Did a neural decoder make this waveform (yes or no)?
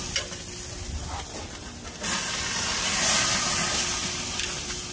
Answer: no